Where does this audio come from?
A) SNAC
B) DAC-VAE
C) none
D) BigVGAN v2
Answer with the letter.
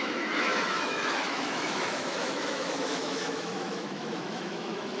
B